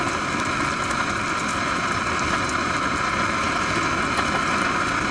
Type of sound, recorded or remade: recorded